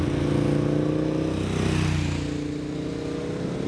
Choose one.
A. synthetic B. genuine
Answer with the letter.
B